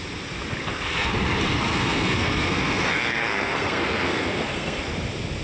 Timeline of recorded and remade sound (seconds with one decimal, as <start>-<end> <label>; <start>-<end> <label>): 0.0-0.6 recorded; 0.6-1.1 remade; 1.1-1.7 recorded; 1.7-4.9 remade; 4.9-5.4 recorded